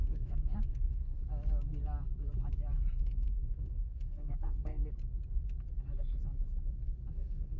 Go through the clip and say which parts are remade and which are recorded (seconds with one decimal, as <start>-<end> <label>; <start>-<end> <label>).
0.0-1.2 remade; 1.2-3.0 recorded; 3.0-4.8 remade; 4.8-7.1 recorded; 7.1-7.6 remade